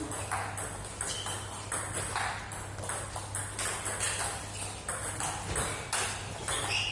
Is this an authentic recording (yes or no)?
yes